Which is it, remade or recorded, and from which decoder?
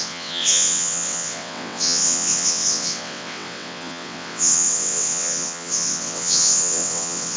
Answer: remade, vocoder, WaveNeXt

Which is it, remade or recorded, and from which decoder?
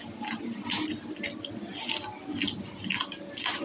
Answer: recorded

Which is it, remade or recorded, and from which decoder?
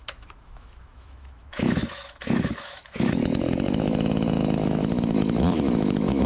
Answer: remade, autoencoder, DAC-VAE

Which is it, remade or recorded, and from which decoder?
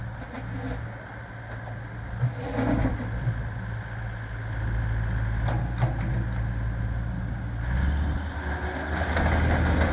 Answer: recorded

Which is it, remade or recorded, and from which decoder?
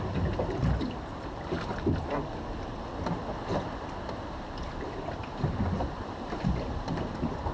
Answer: recorded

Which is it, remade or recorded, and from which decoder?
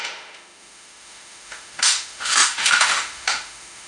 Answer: remade, autoencoder, DAC-VAE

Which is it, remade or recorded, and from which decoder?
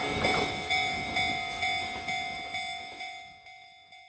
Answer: remade, autoencoder, DAC-VAE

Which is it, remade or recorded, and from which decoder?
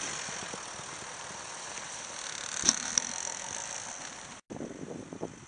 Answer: recorded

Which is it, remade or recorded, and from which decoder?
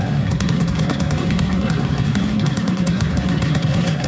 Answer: remade, codec, SNAC